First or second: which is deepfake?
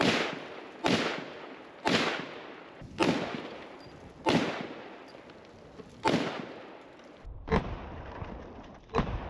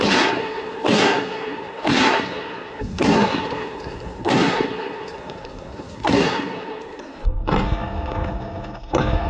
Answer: second